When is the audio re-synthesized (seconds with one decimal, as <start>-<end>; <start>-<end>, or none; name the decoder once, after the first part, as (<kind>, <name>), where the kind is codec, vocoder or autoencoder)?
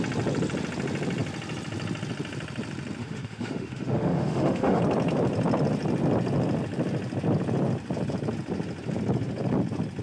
3.0-4.8 (autoencoder, DAC-VAE)